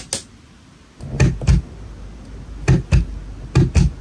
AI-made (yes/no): no